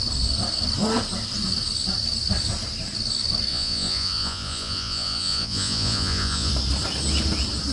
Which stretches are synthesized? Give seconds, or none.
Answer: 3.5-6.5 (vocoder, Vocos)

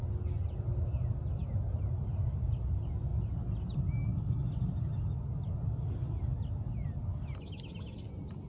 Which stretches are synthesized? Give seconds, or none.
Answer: none

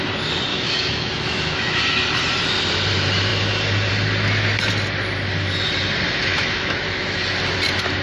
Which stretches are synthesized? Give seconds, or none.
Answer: 0.5-1.8 (autoencoder, DAC-VAE); 6.3-7.2

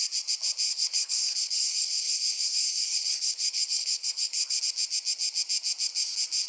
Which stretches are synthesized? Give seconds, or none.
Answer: 0.7-4.6 (codec, HILCodec)